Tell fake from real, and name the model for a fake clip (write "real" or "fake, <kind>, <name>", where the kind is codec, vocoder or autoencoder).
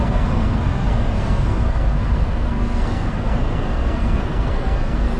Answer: fake, codec, SNAC